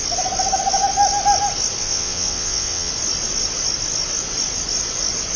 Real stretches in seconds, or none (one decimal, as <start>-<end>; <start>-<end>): 0.0-1.8; 2.9-5.4